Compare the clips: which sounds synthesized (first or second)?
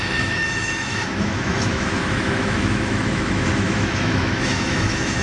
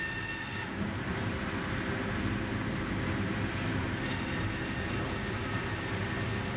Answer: first